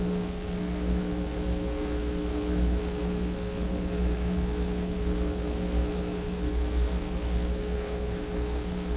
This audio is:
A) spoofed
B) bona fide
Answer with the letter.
A